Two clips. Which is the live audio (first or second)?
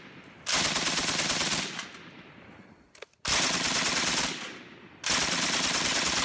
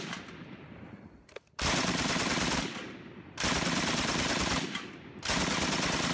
first